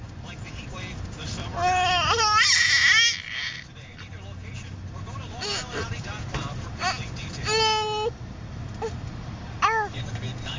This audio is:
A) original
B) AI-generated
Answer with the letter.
A